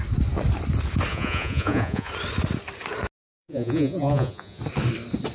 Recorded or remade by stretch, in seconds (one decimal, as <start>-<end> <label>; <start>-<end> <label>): 0.0-1.1 recorded; 1.1-2.1 remade; 2.1-3.4 recorded; 3.4-4.6 remade; 4.6-5.3 recorded